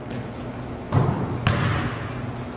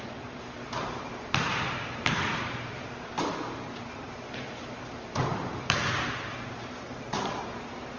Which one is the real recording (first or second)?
first